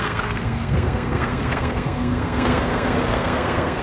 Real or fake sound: fake